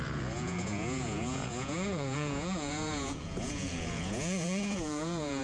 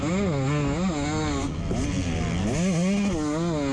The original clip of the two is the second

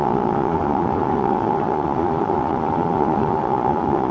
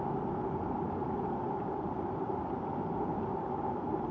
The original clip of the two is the second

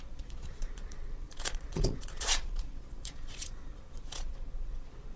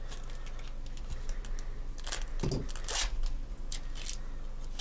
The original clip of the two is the second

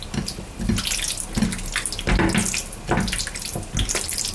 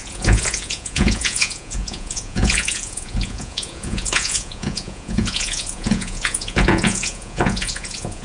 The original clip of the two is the first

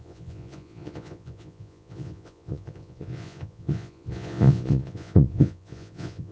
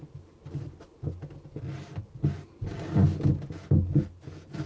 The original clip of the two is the second